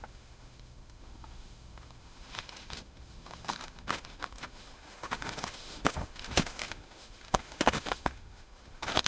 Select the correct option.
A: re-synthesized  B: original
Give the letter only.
A